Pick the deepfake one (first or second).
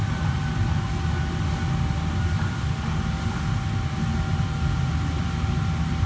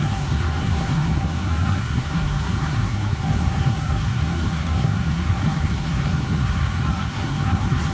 second